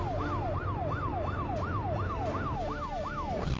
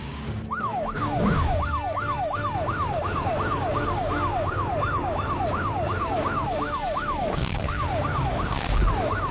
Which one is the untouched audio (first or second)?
first